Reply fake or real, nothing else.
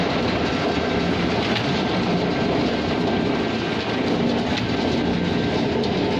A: real